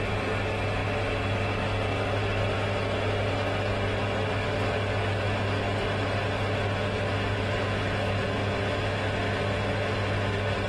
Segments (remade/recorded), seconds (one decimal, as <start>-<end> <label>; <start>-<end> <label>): 0.0-10.7 recorded

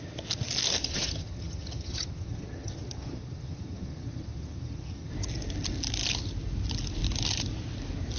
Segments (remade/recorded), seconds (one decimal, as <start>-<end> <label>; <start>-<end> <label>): 0.0-0.8 recorded; 0.8-5.1 remade; 5.1-8.2 recorded

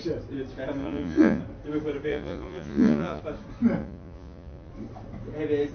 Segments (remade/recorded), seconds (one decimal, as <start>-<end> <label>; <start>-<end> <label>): 0.0-0.8 recorded; 0.8-1.4 remade; 1.4-2.1 recorded; 2.1-3.2 remade; 3.2-3.8 recorded; 3.8-4.7 remade; 4.7-5.7 recorded

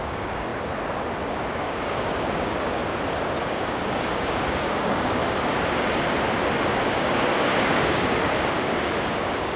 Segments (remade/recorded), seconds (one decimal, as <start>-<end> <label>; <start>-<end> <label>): 0.0-0.5 remade; 0.5-1.3 recorded; 1.3-2.8 remade; 2.8-3.4 recorded; 3.4-5.2 remade; 5.2-6.7 recorded; 6.7-9.6 remade

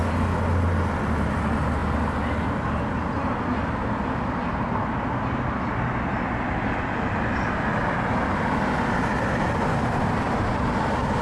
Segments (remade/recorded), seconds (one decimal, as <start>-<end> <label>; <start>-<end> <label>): 0.0-11.2 recorded

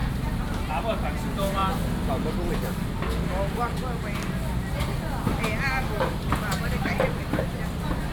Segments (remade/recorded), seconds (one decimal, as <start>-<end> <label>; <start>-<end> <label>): 0.0-0.7 remade; 0.7-8.1 recorded

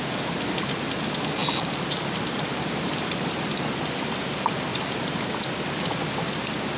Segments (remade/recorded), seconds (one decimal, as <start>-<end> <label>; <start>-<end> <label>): 0.0-1.4 recorded; 1.4-3.5 remade; 3.5-4.7 recorded; 4.7-5.3 remade; 5.3-6.8 recorded

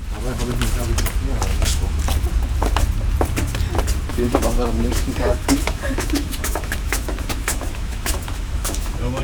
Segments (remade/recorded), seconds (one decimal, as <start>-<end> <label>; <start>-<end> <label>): 0.0-1.5 recorded; 1.5-2.0 remade; 2.0-4.1 recorded; 4.1-9.2 remade